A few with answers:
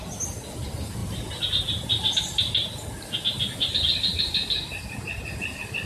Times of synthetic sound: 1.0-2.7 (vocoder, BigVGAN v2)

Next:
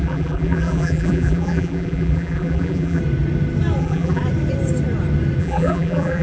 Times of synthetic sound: 0.0-3.0 (vocoder, BigVGAN v2); 3.8-4.2; 5.4-6.2

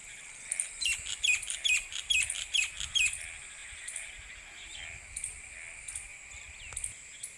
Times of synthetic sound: 0.0-2.6 (vocoder, BigVGAN v2); 3.6-4.3; 6.1-6.6

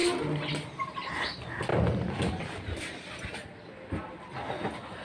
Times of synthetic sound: none

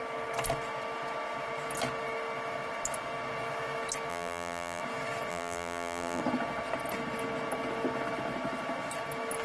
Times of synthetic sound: 4.1-4.8 (vocoder, BigVGAN v2); 5.3-6.2